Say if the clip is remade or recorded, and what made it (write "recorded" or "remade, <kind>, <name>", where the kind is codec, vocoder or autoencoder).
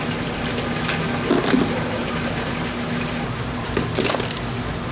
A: recorded